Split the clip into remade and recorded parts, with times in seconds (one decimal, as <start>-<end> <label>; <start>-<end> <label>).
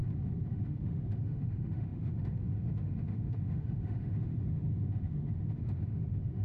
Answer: 0.0-0.5 recorded; 0.5-6.4 remade